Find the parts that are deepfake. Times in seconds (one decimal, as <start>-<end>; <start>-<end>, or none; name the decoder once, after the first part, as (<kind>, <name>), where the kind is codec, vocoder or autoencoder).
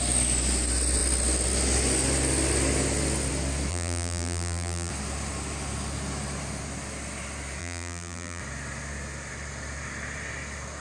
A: 3.7-4.9 (vocoder, BigVGAN v2); 7.6-8.4